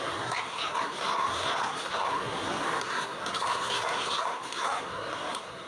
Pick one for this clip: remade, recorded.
remade